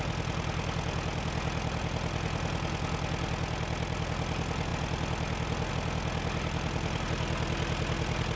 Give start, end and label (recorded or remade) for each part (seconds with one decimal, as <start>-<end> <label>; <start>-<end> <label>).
0.0-8.3 recorded

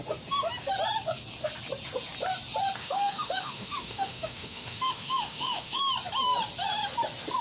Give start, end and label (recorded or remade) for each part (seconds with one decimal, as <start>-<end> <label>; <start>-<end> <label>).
0.0-2.8 recorded; 2.8-5.9 remade; 5.9-7.4 recorded